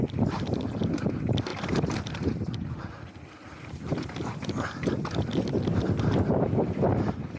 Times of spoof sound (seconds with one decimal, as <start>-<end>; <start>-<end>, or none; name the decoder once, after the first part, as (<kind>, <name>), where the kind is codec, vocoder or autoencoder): none